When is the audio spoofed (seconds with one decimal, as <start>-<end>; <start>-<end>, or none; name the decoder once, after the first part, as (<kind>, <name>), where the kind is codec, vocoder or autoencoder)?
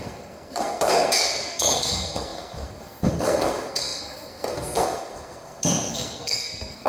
0.0-6.9 (codec, SNAC)